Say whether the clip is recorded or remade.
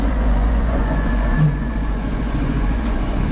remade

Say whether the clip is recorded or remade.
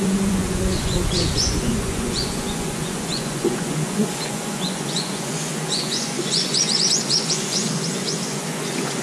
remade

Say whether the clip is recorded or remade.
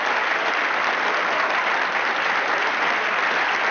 recorded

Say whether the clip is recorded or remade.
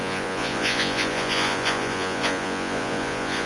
remade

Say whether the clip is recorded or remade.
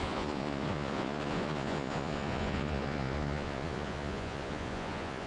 remade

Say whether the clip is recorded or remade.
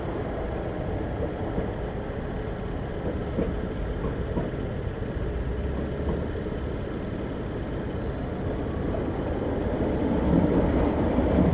recorded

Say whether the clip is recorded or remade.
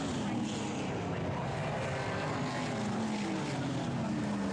recorded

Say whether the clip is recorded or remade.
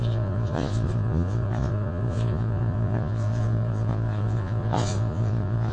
remade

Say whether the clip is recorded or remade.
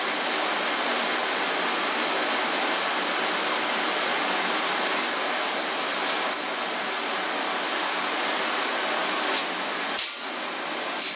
recorded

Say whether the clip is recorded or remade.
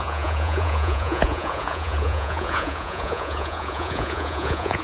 remade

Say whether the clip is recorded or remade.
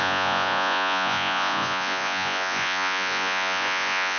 remade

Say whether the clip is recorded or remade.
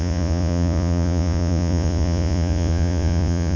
remade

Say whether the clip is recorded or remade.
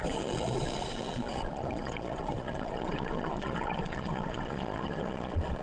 remade